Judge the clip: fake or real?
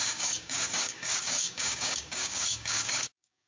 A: fake